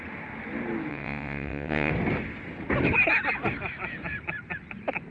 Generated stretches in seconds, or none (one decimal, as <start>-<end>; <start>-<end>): 0.9-1.9